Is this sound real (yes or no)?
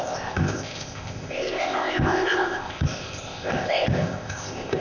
no